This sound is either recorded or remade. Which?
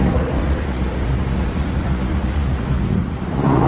remade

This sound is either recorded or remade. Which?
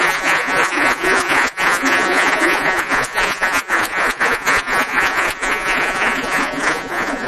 remade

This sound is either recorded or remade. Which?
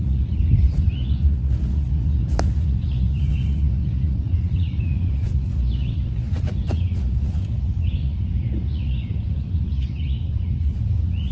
remade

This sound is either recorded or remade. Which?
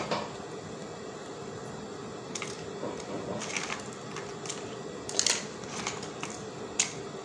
recorded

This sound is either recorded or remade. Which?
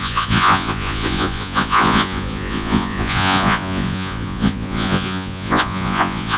remade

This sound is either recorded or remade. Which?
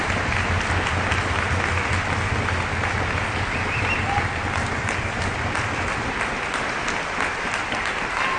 recorded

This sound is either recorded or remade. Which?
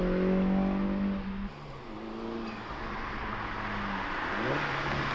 recorded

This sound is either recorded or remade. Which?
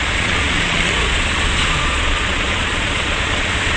remade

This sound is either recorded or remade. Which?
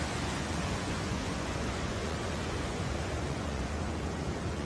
remade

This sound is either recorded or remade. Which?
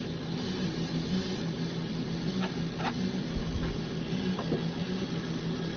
recorded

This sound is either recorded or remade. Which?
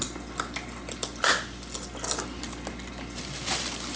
recorded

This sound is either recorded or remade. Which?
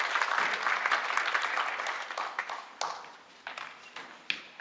recorded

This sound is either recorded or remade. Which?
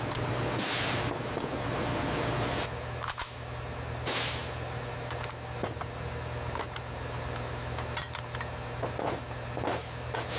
recorded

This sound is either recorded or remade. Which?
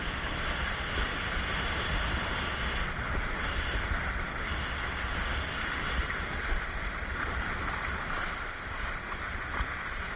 recorded